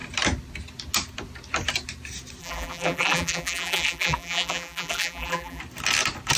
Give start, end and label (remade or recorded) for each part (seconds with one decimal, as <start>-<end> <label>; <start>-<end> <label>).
0.0-2.4 recorded; 2.4-5.6 remade; 5.6-6.4 recorded